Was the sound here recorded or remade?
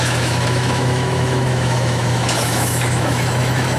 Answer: remade